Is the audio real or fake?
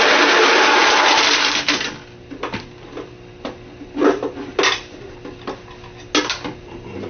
real